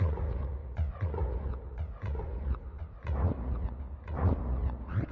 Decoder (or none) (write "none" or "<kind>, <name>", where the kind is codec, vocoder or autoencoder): vocoder, Vocos